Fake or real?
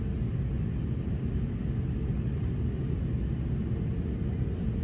real